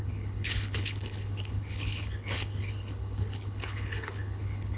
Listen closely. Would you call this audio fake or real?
fake